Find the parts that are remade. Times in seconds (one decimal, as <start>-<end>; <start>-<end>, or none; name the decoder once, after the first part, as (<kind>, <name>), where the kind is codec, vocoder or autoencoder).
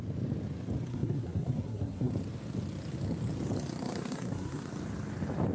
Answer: 0.9-2.1 (codec, SNAC); 3.8-4.7